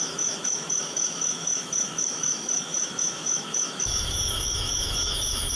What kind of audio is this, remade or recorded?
remade